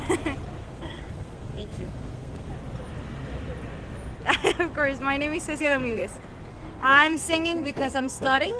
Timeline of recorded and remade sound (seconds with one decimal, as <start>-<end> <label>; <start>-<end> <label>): 0.0-0.6 recorded; 0.6-2.5 remade; 2.5-5.6 recorded; 5.6-6.0 remade; 6.0-6.5 recorded; 6.5-8.6 remade